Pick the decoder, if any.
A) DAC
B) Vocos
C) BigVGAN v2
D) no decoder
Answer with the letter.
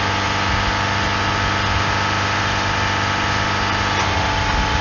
D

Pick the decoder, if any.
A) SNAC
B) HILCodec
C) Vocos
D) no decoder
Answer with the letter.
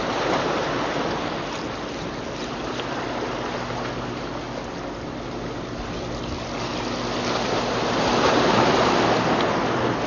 D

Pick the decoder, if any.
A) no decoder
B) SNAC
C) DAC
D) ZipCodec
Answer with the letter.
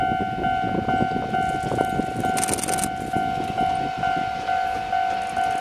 A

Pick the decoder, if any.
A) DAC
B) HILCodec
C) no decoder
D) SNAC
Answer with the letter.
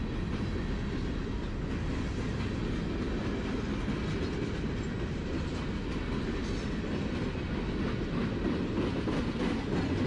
C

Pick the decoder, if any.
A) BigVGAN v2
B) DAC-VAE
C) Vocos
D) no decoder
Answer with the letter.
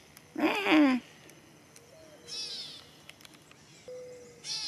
D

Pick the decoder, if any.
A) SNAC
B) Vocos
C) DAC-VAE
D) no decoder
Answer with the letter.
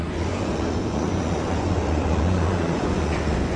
B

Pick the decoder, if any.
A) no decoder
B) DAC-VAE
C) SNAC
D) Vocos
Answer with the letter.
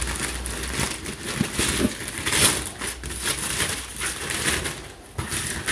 A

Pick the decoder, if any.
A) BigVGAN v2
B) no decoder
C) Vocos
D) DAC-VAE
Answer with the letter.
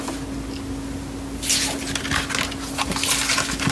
B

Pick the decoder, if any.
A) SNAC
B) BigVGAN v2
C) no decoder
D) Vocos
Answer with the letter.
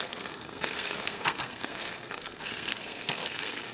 A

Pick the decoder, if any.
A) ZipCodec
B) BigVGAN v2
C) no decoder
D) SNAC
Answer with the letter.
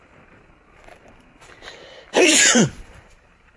B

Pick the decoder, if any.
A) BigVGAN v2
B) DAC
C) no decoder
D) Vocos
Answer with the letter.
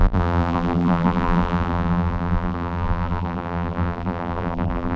A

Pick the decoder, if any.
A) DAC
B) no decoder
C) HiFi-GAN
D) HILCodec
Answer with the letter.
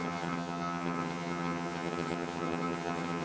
C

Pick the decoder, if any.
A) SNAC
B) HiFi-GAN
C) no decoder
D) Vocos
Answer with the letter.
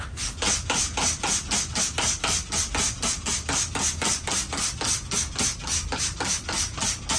C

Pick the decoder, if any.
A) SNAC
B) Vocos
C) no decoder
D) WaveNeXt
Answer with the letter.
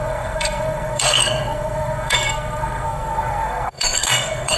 A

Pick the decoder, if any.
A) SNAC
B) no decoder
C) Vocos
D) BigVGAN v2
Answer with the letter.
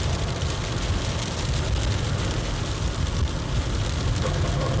B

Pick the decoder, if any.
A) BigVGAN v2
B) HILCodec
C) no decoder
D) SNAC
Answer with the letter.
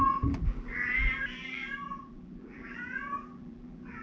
A